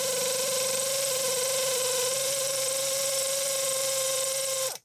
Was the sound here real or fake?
fake